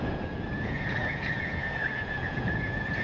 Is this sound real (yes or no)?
no